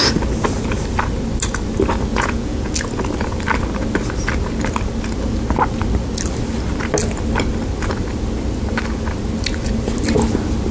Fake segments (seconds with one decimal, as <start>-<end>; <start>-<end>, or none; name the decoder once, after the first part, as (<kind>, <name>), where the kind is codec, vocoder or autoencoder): 2.1-2.7 (vocoder, Vocos)